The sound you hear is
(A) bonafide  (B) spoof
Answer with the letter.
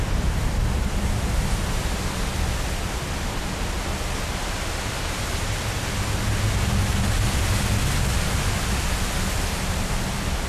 A